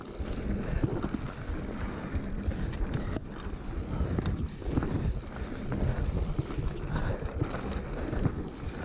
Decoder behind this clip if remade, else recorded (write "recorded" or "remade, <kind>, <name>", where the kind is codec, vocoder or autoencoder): recorded